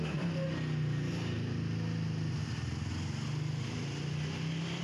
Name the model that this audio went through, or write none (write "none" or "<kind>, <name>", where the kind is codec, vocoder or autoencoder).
none